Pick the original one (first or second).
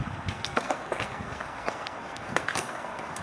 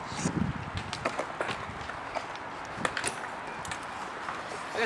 second